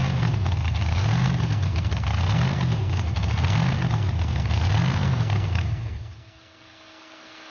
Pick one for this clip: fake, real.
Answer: fake